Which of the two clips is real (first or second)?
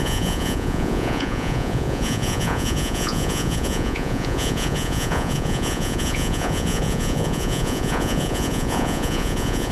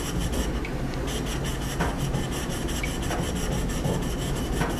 second